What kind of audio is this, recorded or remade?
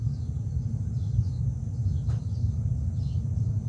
recorded